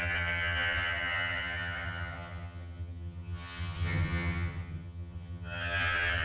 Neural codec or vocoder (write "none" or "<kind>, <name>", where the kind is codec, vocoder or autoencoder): vocoder, HiFi-GAN